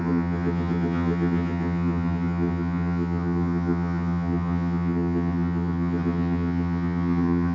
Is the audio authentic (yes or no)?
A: no